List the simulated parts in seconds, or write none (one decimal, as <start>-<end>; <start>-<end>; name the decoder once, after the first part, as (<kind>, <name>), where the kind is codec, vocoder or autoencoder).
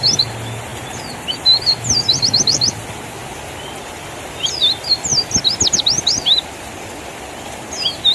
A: none